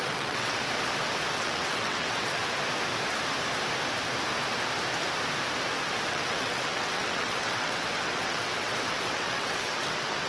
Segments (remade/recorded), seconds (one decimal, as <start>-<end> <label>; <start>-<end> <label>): 0.0-0.6 remade; 0.6-1.3 recorded; 1.3-2.4 remade; 2.4-6.1 recorded; 6.1-10.3 remade